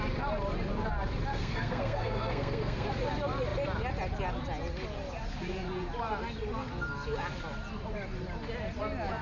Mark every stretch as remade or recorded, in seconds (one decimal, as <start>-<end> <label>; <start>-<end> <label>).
0.0-1.3 recorded; 1.3-2.9 remade; 2.9-9.2 recorded

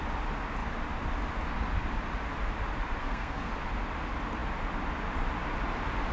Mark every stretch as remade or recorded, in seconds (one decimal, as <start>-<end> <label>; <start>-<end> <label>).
0.0-3.0 recorded; 3.0-3.5 remade; 3.5-6.1 recorded

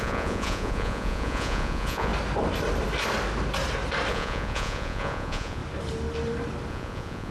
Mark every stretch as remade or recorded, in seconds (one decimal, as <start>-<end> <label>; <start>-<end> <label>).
0.0-2.1 remade; 2.1-4.1 recorded; 4.1-5.6 remade; 5.6-6.7 recorded; 6.7-7.3 remade

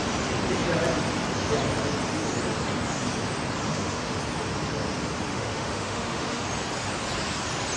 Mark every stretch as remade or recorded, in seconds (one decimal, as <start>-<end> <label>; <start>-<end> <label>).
0.0-3.7 recorded; 3.7-4.2 remade; 4.2-5.3 recorded; 5.3-6.4 remade; 6.4-7.8 recorded

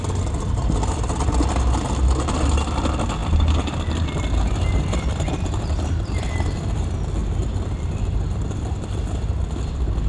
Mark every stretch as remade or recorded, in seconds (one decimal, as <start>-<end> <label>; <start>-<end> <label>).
0.0-10.1 recorded

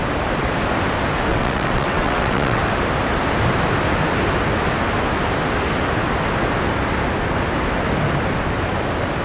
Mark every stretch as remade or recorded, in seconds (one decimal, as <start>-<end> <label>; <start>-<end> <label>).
0.0-1.3 recorded; 1.3-2.6 remade; 2.6-9.2 recorded

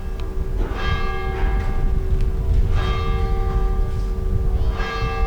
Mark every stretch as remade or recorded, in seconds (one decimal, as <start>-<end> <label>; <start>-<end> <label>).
0.0-3.2 recorded; 3.2-3.8 remade; 3.8-5.3 recorded